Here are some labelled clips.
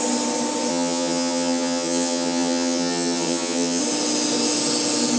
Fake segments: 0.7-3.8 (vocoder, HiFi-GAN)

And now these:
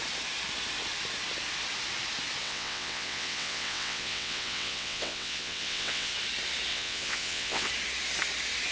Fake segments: 2.4-6.1 (vocoder, WaveNeXt); 6.7-7.7

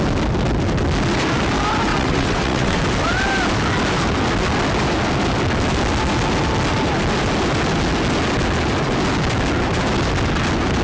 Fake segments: 1.9-2.8 (vocoder, WaveNeXt)

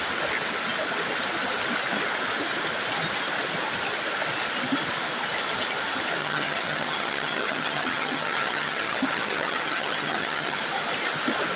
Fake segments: 6.2-10.6 (vocoder, HiFi-GAN)